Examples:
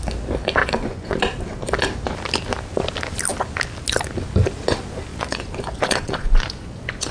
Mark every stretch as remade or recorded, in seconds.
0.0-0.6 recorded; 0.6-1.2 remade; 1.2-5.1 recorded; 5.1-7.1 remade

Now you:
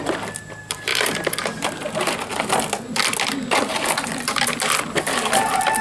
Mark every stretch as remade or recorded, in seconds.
0.0-5.8 recorded